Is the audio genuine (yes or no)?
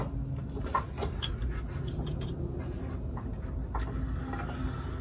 yes